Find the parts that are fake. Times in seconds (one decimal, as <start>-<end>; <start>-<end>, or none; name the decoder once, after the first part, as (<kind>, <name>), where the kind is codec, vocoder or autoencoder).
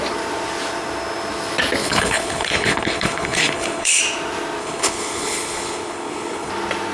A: 1.8-4.0 (codec, HILCodec); 4.6-6.5